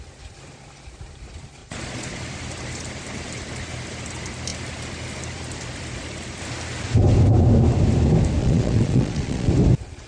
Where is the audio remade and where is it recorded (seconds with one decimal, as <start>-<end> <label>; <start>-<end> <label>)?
0.0-1.6 recorded; 1.6-2.2 remade; 2.2-8.4 recorded; 8.4-9.5 remade; 9.5-10.1 recorded